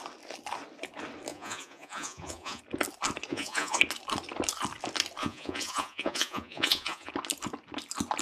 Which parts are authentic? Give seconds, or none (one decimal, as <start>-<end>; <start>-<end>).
0.0-1.3; 2.6-3.3; 3.8-5.2; 7.1-8.2